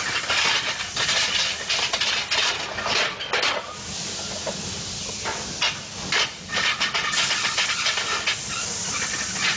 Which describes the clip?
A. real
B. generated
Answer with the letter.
A